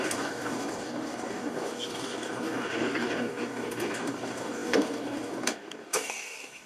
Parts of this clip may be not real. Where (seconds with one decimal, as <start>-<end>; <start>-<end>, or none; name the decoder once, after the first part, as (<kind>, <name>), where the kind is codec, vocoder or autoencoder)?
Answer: 0.0-6.7 (codec, DAC)

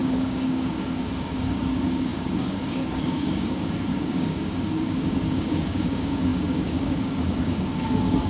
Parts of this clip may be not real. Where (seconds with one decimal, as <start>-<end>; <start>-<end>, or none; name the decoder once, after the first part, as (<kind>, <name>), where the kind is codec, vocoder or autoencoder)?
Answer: 0.0-8.3 (codec, DAC)

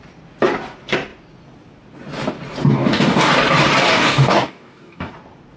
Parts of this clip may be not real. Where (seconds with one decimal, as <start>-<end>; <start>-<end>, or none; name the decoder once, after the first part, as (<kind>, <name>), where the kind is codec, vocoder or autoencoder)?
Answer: 2.7-3.3 (codec, DAC); 3.9-5.1

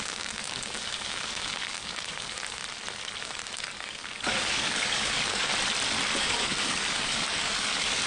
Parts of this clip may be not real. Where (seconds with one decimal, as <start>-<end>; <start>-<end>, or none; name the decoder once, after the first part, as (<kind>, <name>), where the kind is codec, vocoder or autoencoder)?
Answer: 0.0-2.6 (codec, DAC); 3.2-5.5; 6.2-8.1

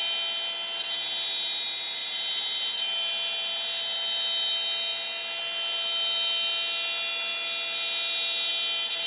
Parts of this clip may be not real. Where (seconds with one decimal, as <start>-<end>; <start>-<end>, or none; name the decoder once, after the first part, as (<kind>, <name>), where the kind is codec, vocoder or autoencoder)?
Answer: none

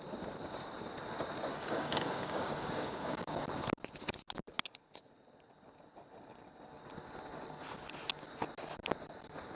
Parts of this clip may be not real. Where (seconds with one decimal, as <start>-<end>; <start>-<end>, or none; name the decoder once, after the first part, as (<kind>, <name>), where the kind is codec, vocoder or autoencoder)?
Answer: 1.5-3.4 (codec, DAC)

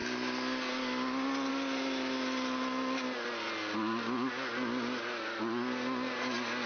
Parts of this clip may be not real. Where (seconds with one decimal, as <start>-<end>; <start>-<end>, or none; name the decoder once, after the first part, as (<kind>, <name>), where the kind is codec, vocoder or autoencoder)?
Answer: none